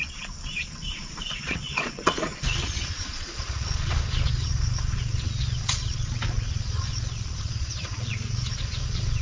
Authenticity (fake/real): fake